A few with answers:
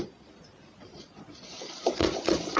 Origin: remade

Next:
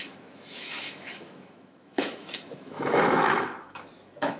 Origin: remade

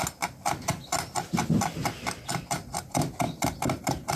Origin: recorded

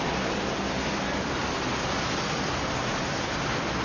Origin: recorded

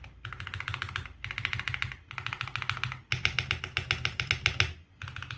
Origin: recorded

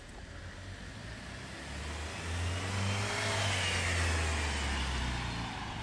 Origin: recorded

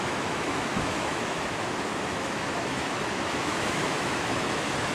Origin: remade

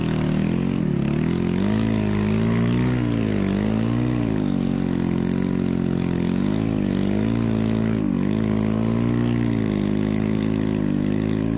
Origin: recorded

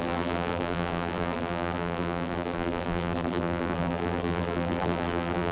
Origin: remade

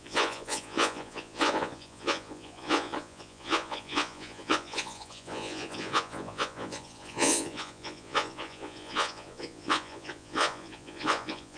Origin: remade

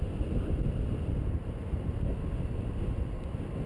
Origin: recorded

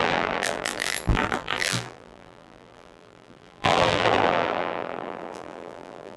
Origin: remade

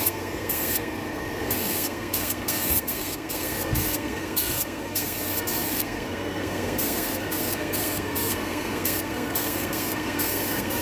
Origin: remade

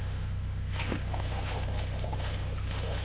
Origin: remade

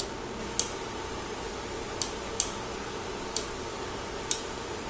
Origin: recorded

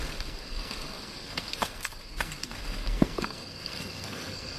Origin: remade